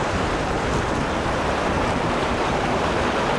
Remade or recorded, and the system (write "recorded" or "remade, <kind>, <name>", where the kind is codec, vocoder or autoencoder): recorded